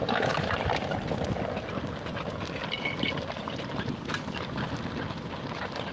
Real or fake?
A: real